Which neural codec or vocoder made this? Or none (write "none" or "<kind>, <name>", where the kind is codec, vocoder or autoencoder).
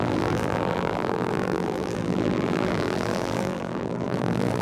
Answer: vocoder, BigVGAN v2